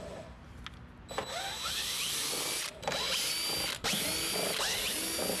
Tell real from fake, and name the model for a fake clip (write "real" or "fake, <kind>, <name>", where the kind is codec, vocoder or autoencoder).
real